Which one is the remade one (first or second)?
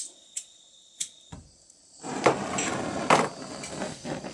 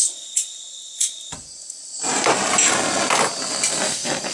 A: first